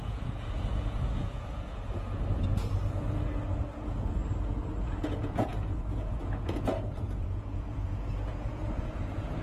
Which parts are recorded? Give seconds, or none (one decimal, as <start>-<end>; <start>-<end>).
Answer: 4.2-4.8